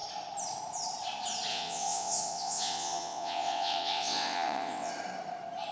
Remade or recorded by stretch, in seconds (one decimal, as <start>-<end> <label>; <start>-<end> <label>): 0.0-1.5 recorded; 1.5-4.9 remade; 4.9-5.7 recorded